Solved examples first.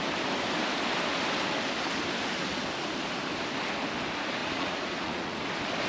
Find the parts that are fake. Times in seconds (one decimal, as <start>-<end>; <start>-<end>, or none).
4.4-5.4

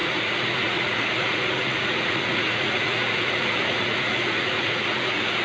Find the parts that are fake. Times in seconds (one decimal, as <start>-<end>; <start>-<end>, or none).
0.0-5.4

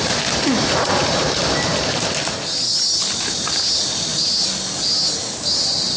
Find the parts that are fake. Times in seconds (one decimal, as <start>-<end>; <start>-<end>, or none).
0.6-1.2

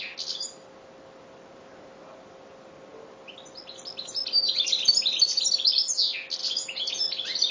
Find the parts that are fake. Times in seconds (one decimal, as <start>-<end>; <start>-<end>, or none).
6.4-7.0

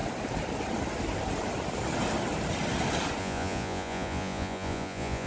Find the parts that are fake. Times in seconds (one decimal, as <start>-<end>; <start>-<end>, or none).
3.2-5.3